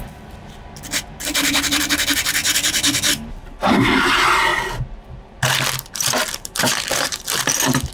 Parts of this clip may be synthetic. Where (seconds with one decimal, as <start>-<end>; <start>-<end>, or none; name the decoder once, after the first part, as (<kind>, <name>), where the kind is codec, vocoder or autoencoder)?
0.0-4.5 (vocoder, BigVGAN v2); 5.5-7.9